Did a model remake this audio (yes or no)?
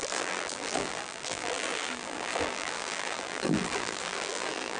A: yes